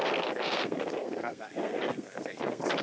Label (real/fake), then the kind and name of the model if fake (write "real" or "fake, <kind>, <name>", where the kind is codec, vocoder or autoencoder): fake, codec, SNAC